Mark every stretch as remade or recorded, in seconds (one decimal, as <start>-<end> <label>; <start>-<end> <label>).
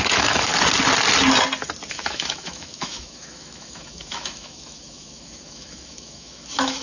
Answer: 0.0-0.5 remade; 0.5-1.9 recorded; 1.9-6.8 remade